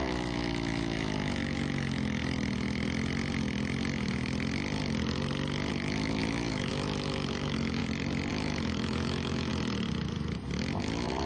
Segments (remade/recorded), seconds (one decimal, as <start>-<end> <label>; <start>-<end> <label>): 0.0-2.2 remade; 2.2-5.7 recorded; 5.7-7.8 remade; 7.8-8.3 recorded; 8.3-9.5 remade; 9.5-10.8 recorded; 10.8-11.3 remade